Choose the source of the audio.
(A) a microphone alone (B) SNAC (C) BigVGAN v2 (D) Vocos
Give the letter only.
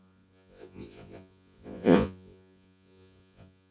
D